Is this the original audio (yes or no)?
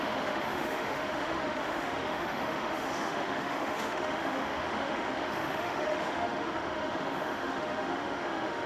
no